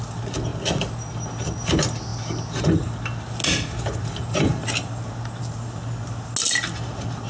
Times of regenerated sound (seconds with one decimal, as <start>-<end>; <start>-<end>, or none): none